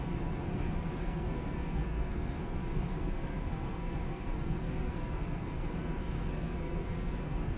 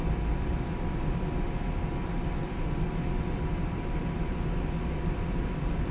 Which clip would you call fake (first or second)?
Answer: first